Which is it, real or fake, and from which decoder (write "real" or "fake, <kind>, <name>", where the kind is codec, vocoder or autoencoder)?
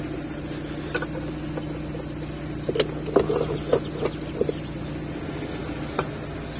real